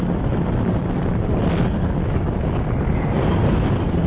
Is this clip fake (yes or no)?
no